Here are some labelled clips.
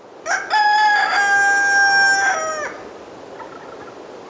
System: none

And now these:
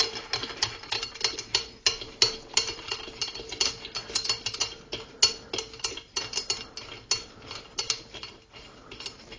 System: none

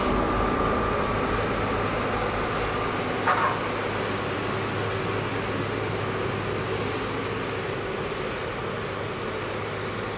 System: none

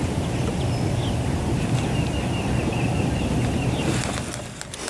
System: none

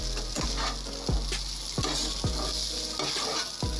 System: none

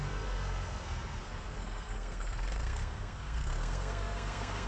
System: codec, SNAC